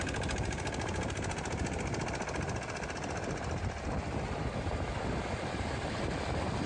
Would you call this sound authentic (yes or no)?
yes